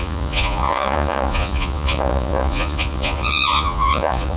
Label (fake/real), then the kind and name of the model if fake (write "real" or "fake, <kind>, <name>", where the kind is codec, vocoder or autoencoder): fake, vocoder, Vocos